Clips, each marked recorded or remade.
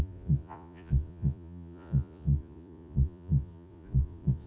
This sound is remade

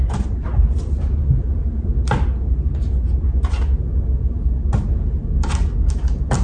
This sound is recorded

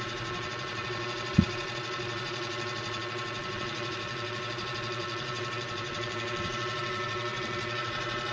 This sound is remade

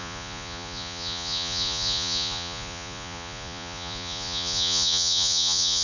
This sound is remade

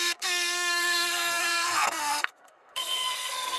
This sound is remade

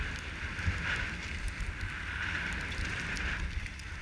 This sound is recorded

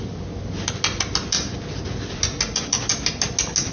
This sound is recorded